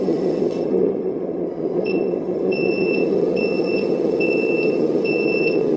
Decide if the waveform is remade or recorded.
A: remade